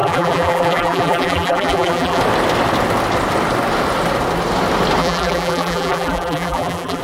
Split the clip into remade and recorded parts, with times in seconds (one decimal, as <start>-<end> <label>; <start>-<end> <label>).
0.0-2.2 remade; 2.2-5.0 recorded; 5.0-7.0 remade